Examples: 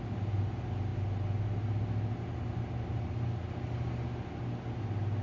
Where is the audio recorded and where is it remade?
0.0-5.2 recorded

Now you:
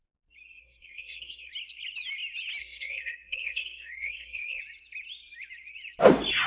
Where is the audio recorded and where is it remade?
0.0-0.6 recorded; 0.6-1.5 remade; 1.5-2.6 recorded; 2.6-4.6 remade; 4.6-6.5 recorded

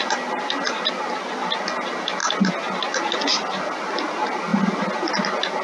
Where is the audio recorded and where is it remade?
0.0-5.6 recorded

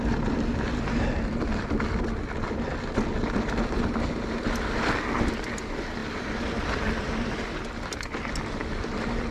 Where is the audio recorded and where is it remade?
0.0-9.3 recorded

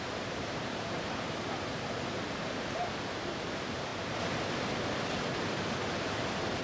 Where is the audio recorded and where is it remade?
0.0-1.7 remade; 1.7-2.6 recorded; 2.6-3.9 remade; 3.9-6.6 recorded

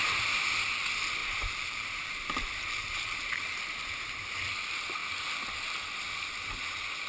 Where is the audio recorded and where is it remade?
0.0-1.2 recorded; 1.2-3.6 remade; 3.6-7.1 recorded